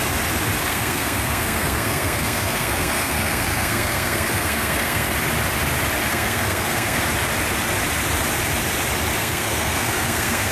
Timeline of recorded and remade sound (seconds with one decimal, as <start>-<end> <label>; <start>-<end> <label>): 0.0-0.7 recorded; 0.7-5.1 remade; 5.1-6.1 recorded; 6.1-7.0 remade; 7.0-9.2 recorded; 9.2-10.5 remade